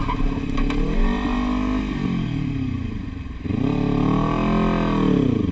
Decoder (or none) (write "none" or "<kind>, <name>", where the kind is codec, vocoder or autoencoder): none